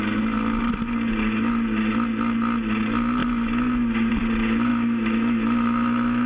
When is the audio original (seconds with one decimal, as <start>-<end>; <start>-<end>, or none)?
0.0-4.7